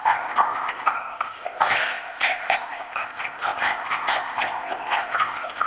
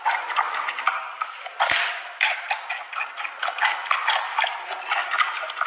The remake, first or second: first